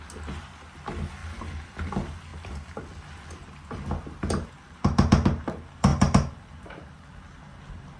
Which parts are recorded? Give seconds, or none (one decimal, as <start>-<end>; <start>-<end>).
0.0-2.3; 4.5-8.0